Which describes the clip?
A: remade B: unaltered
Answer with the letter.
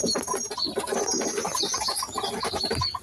B